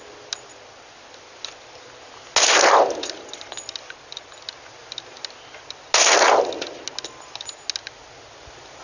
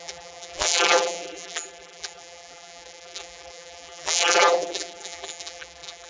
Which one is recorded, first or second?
first